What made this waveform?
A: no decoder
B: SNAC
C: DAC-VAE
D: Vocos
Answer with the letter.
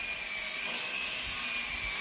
A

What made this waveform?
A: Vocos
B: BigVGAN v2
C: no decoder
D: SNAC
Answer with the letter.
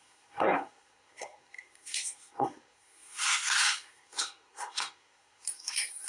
D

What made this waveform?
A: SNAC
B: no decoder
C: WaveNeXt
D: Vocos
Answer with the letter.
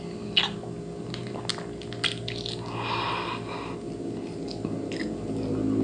B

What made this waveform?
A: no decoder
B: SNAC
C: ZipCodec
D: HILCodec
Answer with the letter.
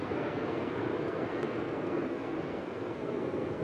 B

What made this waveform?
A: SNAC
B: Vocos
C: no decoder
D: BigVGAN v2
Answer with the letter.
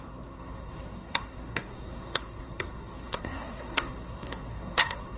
A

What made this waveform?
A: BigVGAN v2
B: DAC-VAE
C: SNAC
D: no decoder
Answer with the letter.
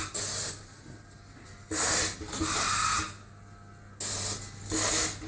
D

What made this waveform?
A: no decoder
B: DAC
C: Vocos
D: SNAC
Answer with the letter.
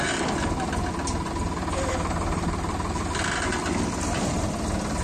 A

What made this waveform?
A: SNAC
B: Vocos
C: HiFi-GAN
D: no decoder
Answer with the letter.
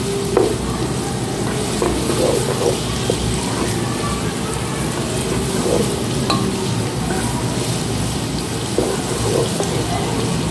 D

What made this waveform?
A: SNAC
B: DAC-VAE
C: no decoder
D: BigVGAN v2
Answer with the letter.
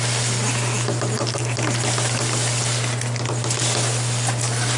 C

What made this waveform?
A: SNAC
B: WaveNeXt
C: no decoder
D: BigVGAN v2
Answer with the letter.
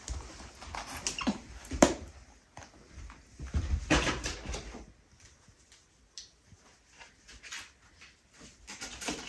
C